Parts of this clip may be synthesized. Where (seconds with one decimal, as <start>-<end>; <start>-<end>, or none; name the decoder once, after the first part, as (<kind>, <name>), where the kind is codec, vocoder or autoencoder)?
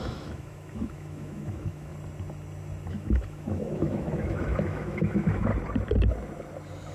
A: 0.0-1.9 (autoencoder, DAC-VAE); 2.9-5.5